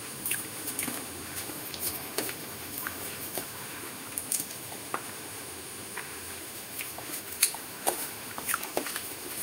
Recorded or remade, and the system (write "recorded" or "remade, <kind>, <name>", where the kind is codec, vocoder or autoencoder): remade, autoencoder, DAC-VAE